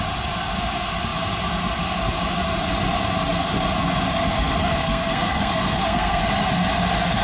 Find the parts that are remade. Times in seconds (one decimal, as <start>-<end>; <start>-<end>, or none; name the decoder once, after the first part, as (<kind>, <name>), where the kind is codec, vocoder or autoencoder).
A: 4.6-6.2 (codec, SNAC)